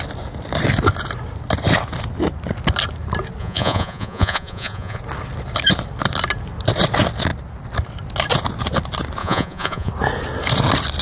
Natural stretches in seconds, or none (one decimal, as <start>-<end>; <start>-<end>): 0.0-3.4; 5.0-9.2; 9.9-11.0

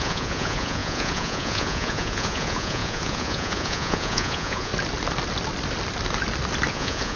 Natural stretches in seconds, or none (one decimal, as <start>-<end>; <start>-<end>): 4.7-6.7